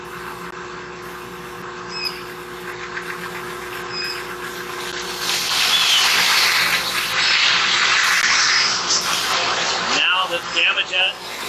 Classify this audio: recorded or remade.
recorded